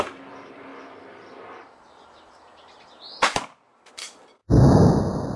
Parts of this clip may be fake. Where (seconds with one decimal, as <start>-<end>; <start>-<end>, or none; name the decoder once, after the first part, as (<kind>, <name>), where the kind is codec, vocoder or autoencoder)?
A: 0.0-0.7 (vocoder, BigVGAN v2); 3.9-4.4